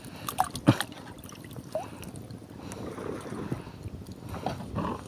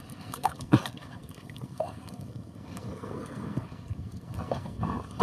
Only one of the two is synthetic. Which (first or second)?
second